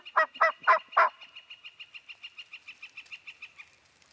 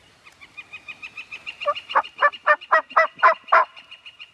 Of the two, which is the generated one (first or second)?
second